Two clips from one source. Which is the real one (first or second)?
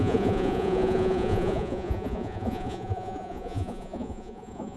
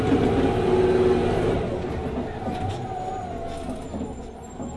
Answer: second